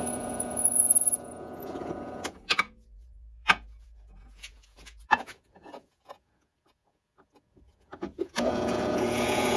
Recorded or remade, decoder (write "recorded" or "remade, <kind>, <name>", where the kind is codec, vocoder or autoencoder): remade, vocoder, Vocos